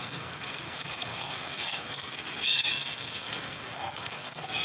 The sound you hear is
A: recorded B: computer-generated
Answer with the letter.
B